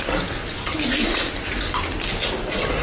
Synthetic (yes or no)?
no